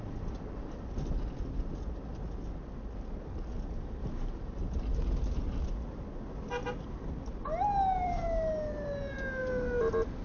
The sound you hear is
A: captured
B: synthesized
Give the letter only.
A